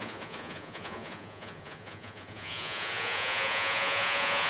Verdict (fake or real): fake